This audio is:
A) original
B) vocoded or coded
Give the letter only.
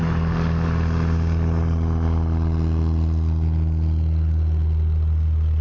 A